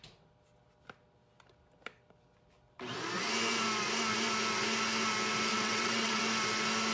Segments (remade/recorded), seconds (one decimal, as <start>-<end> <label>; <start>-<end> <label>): 0.0-5.5 recorded; 5.5-6.2 remade; 6.2-6.9 recorded